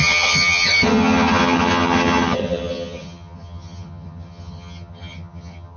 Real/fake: fake